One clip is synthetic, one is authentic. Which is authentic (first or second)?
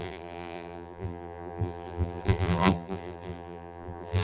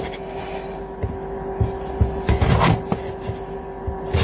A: second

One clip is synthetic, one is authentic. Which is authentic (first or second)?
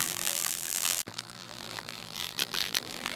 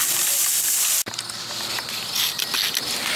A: second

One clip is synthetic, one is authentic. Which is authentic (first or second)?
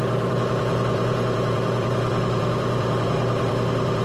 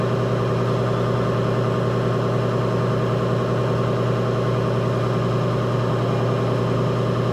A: second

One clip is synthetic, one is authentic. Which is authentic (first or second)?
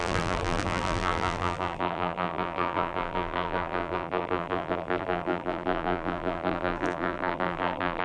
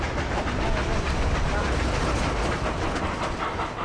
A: second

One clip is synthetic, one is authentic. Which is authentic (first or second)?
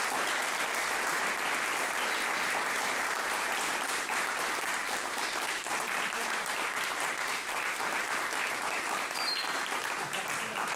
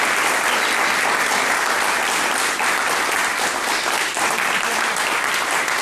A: second